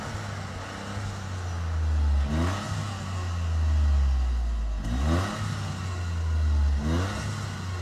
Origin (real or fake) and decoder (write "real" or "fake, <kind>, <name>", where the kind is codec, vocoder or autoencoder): real